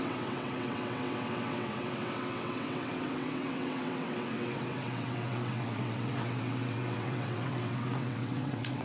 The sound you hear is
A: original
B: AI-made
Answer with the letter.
B